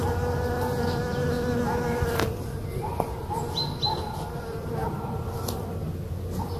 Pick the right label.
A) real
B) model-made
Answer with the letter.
A